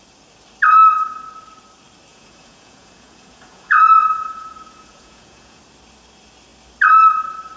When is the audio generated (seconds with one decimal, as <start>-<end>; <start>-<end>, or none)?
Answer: 2.1-5.6